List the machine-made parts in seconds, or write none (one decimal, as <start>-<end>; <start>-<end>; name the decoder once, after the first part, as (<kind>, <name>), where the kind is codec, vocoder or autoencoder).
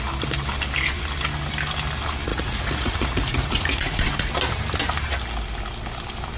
2.3-4.3 (vocoder, Vocos)